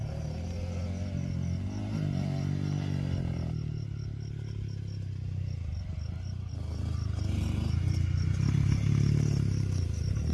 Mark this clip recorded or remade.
recorded